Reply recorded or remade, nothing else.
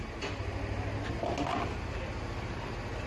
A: recorded